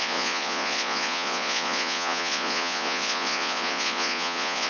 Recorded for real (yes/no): no